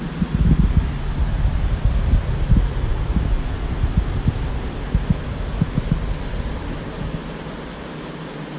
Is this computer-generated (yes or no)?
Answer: no